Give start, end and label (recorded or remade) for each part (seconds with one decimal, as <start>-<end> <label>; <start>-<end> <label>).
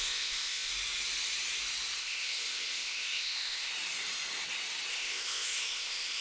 0.0-0.7 remade; 0.7-2.0 recorded; 2.0-3.7 remade; 3.7-4.9 recorded; 4.9-6.2 remade